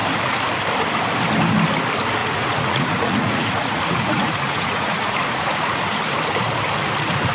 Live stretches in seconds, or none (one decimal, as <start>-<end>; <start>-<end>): 0.0-2.2; 5.8-7.3